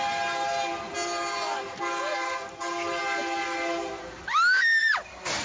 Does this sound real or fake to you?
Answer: real